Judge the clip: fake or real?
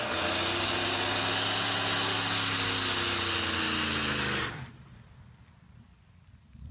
real